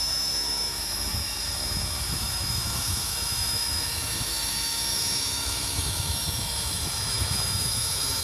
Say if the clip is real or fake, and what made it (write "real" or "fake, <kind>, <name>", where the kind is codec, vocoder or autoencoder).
fake, autoencoder, DAC-VAE